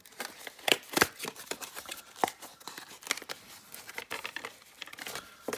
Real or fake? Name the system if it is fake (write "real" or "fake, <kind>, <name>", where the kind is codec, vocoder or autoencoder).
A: fake, vocoder, BigVGAN v2